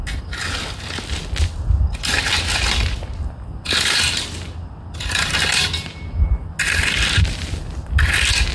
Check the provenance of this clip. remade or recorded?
recorded